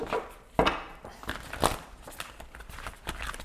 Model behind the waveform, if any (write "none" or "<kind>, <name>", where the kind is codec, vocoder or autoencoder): none